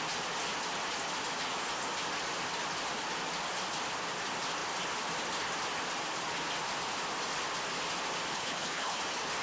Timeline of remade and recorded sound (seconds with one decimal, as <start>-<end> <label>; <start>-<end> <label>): 0.0-8.3 recorded; 8.3-9.0 remade; 9.0-9.4 recorded